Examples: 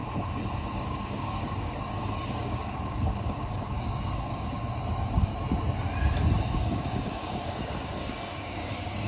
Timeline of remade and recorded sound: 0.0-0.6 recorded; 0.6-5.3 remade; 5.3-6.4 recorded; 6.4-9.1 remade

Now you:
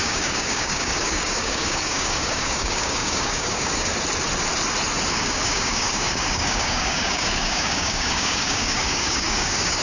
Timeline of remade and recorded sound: 0.0-3.9 remade; 3.9-5.1 recorded; 5.1-9.8 remade

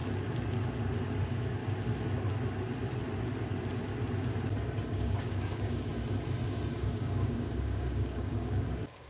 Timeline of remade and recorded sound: 0.0-1.2 recorded; 1.2-1.6 remade; 1.6-4.9 recorded; 4.9-5.9 remade; 5.9-6.7 recorded; 6.7-9.1 remade

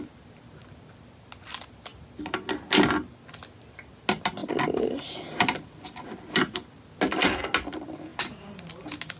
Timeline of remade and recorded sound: 0.0-9.2 recorded

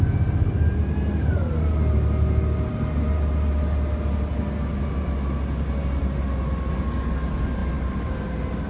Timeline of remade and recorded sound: 0.0-8.7 recorded

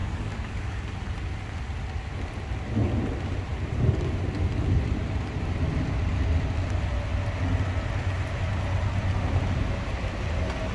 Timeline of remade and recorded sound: 0.0-0.8 remade; 0.8-10.7 recorded

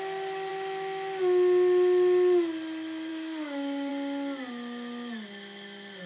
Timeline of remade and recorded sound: 0.0-3.1 recorded; 3.1-3.9 remade; 3.9-6.1 recorded

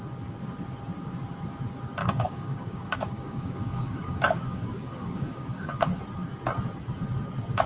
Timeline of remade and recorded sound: 0.0-2.0 recorded; 2.0-6.0 remade; 6.0-7.7 recorded